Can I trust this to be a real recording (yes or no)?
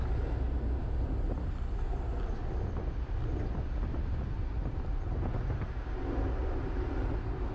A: yes